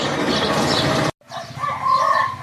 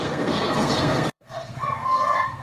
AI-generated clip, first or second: second